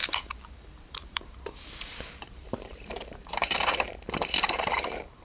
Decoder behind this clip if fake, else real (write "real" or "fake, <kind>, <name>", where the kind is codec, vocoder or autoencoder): fake, vocoder, BigVGAN v2